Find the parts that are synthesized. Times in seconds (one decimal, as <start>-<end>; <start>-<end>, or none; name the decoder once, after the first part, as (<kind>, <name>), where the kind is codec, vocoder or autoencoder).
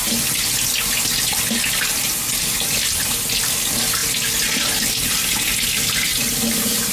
6.1-6.9 (vocoder, BigVGAN v2)